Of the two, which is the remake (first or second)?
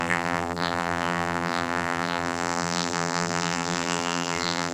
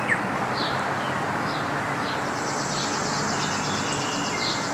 first